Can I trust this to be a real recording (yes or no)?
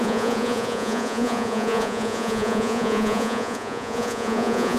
no